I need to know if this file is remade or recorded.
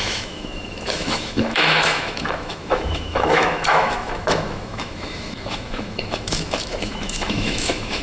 remade